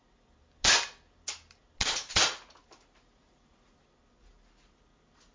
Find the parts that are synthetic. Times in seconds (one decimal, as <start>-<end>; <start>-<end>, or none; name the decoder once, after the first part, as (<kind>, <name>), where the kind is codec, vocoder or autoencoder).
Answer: none

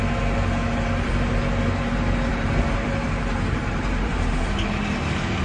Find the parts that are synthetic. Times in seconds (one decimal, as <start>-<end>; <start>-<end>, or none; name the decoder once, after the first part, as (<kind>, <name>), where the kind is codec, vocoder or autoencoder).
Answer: 2.3-4.8 (vocoder, BigVGAN v2)

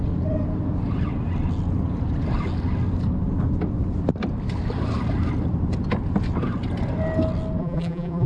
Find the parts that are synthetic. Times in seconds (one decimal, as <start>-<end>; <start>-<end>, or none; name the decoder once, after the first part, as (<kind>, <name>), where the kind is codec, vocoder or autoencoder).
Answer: 7.6-8.3 (vocoder, BigVGAN v2)